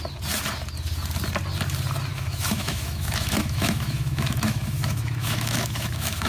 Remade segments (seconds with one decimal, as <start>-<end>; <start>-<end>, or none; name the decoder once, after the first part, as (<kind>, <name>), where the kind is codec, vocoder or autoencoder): 2.1-6.3 (autoencoder, DAC-VAE)